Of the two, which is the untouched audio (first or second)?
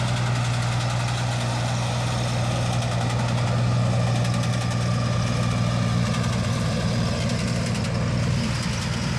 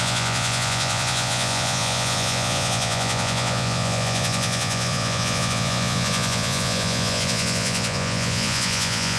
first